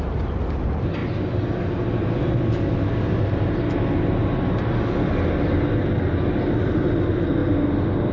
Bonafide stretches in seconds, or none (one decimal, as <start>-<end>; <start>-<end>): 1.0-5.8; 7.4-8.1